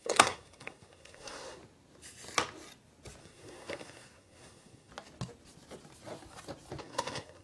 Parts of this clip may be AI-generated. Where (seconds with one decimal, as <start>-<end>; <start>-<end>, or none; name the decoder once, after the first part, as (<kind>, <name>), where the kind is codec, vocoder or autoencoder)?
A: 0.0-1.6 (codec, SNAC); 3.2-4.9; 6.8-7.4